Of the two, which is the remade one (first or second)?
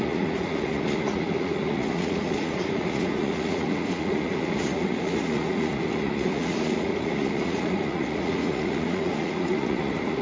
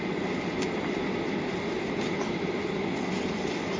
first